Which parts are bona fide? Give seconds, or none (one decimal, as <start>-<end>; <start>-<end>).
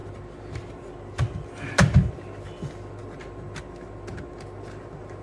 0.0-5.2